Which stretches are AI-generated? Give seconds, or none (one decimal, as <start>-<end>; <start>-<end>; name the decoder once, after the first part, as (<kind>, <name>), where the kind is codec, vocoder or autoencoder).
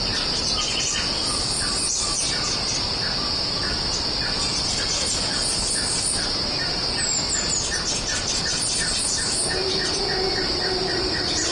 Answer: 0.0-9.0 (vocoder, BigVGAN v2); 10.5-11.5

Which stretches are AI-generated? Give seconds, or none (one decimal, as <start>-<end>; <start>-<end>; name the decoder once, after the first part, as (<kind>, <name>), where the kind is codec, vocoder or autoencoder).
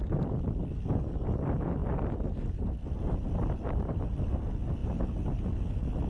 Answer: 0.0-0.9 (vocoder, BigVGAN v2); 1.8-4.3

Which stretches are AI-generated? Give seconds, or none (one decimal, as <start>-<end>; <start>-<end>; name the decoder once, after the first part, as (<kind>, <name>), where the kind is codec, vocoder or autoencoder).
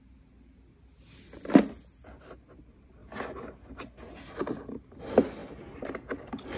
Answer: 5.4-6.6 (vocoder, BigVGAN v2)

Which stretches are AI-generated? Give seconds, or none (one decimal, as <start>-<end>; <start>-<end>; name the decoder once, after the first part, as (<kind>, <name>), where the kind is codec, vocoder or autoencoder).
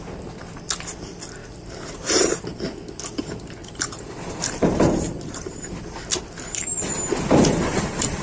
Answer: 1.4-2.4 (vocoder, BigVGAN v2); 3.6-5.7